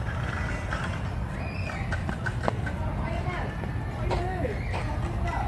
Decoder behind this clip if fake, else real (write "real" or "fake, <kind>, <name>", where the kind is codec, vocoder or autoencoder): real